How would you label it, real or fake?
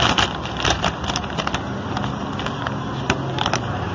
real